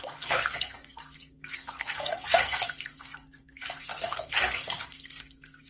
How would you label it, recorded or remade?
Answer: remade